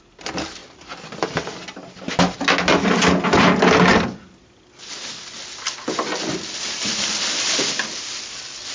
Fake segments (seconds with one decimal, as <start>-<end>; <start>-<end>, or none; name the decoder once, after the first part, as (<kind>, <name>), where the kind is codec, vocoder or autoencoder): none

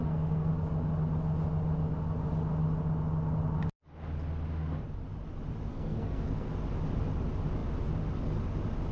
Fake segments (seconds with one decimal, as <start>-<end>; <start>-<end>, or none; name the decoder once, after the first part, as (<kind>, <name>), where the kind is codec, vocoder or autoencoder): 0.0-0.5 (codec, SNAC); 5.7-6.5

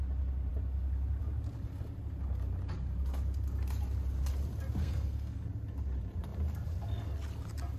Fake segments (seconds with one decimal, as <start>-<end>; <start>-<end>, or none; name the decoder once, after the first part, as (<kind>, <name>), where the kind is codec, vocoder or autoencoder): 4.8-5.4 (codec, SNAC)

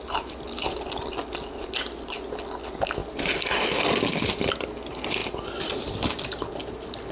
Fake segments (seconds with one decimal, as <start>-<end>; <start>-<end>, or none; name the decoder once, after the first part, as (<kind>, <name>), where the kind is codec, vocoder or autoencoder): none

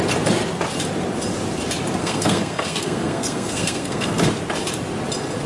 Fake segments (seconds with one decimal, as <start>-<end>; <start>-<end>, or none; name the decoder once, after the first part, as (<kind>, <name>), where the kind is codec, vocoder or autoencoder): 2.0-4.3 (codec, SNAC)

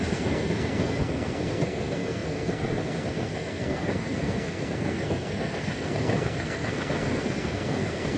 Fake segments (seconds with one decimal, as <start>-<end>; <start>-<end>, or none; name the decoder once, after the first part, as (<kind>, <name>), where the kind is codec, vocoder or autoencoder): 0.0-8.2 (codec, SNAC)

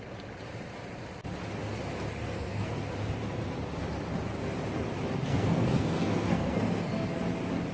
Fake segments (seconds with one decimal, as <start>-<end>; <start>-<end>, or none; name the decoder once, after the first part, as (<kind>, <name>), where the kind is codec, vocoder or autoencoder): 2.2-2.7 (codec, SNAC); 5.3-7.2

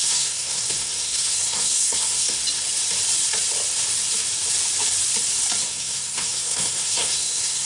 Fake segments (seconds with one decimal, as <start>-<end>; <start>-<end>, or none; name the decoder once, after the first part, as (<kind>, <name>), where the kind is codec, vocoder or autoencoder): 0.0-2.4 (codec, SNAC); 5.6-7.7